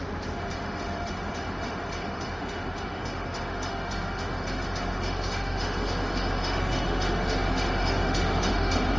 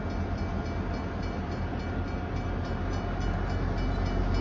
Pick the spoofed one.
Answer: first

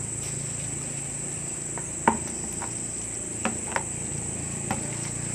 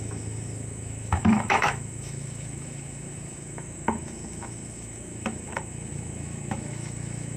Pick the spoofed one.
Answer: second